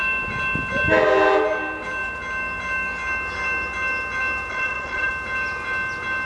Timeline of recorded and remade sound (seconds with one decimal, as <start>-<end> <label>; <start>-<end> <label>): 0.0-4.5 recorded; 4.5-5.1 remade; 5.1-6.3 recorded